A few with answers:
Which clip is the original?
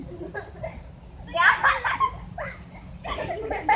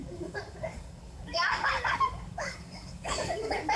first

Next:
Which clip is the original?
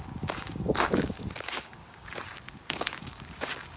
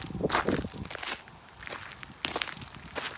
second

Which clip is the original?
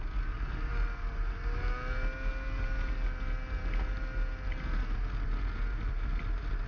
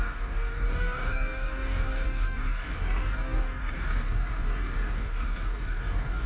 first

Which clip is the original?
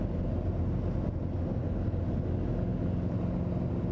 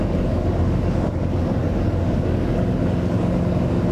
first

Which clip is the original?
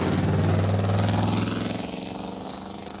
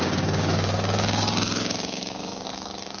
first